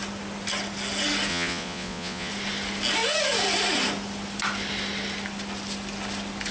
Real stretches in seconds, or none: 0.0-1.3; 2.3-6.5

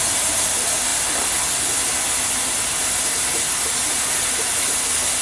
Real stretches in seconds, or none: 0.0-5.2

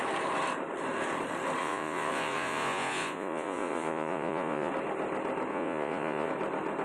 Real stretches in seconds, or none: 0.0-1.6; 4.7-5.5; 6.3-6.8

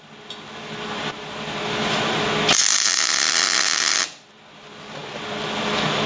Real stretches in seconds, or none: 0.0-6.1